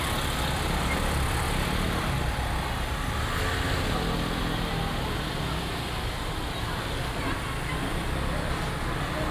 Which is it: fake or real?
real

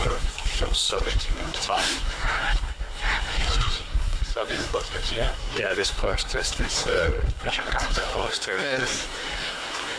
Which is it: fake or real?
fake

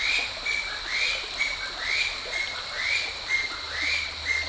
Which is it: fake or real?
real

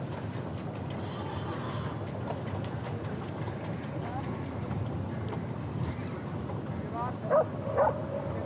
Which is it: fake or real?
real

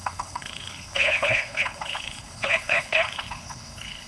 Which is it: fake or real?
fake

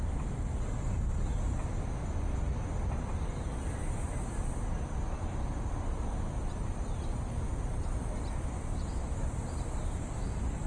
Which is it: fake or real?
real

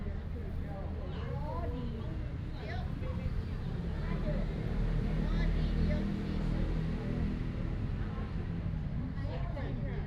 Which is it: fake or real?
real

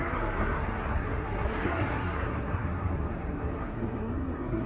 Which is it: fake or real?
fake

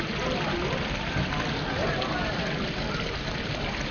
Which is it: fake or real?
real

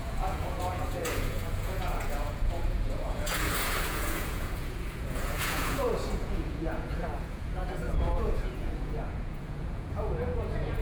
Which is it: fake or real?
fake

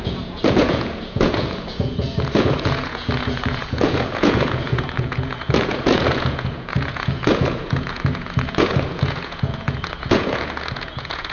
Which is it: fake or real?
fake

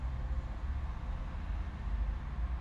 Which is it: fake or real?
real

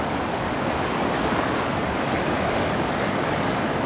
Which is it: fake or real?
fake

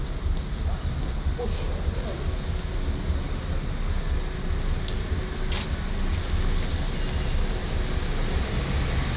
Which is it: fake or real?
real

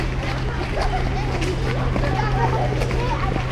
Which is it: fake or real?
real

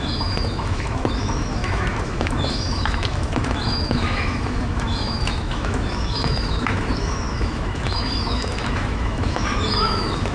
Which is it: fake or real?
fake